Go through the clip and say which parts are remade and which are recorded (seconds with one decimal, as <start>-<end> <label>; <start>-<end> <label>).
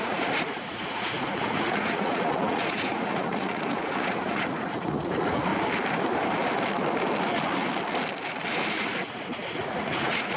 0.0-5.5 remade; 5.5-8.7 recorded; 8.7-10.4 remade